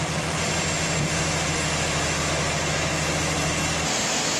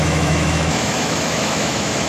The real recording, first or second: first